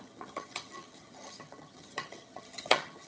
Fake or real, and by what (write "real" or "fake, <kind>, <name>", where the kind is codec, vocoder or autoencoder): fake, vocoder, HiFi-GAN